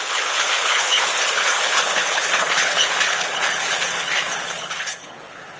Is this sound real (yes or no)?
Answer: no